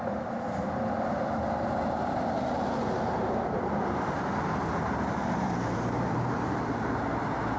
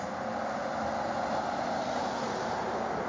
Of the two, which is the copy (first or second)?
first